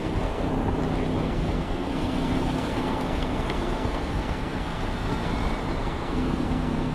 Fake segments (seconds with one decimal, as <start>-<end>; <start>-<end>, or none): 0.0-0.5; 1.2-5.3; 5.8-6.9